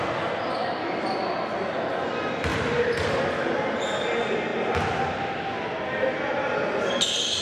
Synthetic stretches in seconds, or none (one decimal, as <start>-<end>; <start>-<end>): 2.5-3.2